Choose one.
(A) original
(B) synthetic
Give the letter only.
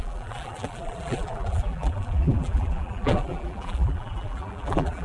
B